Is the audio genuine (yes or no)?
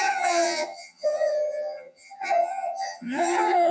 no